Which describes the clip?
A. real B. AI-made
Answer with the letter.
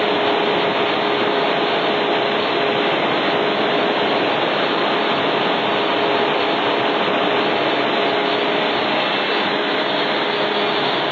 A